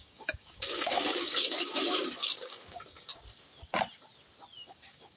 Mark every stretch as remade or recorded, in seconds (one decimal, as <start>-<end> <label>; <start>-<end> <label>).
0.0-3.1 remade; 3.1-4.7 recorded; 4.7-5.2 remade

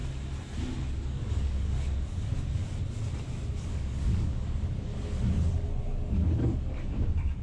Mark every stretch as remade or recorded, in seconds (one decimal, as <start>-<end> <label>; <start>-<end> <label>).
0.0-0.8 recorded; 0.8-2.6 remade; 2.6-3.5 recorded; 3.5-4.9 remade; 4.9-5.8 recorded; 5.8-7.4 remade

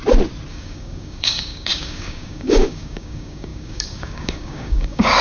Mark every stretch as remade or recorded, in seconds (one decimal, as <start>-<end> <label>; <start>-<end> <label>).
0.0-0.5 recorded; 0.5-5.2 remade

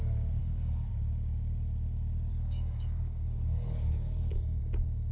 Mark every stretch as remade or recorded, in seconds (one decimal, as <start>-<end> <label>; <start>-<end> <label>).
0.0-0.4 recorded; 0.4-0.9 remade; 0.9-2.3 recorded; 2.3-4.6 remade; 4.6-5.1 recorded

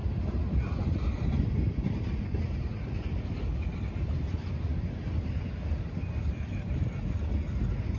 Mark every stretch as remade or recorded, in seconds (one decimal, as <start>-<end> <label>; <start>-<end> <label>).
0.0-8.0 recorded

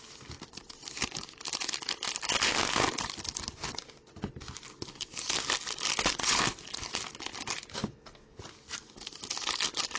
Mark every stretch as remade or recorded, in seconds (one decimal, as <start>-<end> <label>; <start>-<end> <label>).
0.0-7.8 recorded; 7.8-8.4 remade; 8.4-10.0 recorded

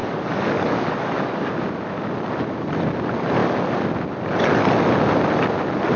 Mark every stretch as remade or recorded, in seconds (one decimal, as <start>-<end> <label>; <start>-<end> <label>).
0.0-1.5 remade; 1.5-6.0 recorded

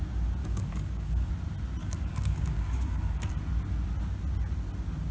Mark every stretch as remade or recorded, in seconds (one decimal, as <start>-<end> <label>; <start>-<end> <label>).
0.0-0.4 recorded; 0.4-1.3 remade; 1.3-1.8 recorded; 1.8-3.3 remade; 3.3-5.1 recorded